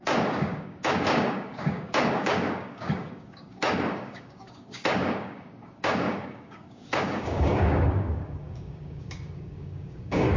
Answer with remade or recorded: remade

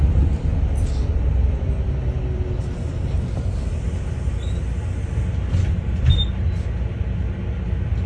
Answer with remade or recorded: recorded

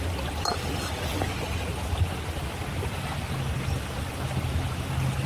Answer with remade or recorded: recorded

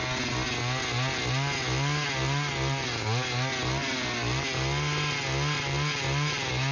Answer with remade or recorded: recorded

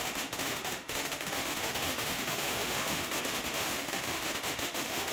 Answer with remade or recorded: remade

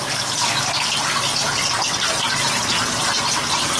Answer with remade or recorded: recorded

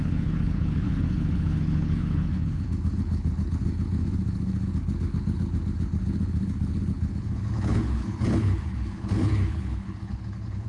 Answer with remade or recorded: remade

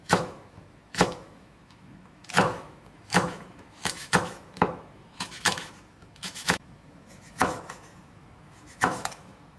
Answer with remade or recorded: remade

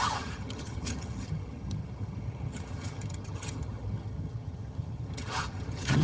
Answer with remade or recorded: remade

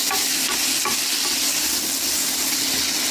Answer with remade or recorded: recorded